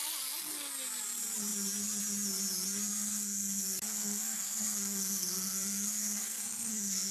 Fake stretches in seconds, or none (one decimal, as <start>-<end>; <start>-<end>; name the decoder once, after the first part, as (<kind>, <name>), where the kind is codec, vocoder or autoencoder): 2.9-7.1 (codec, SNAC)